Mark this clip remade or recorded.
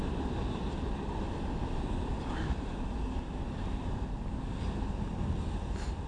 recorded